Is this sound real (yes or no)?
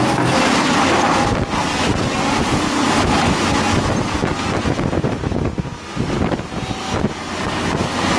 yes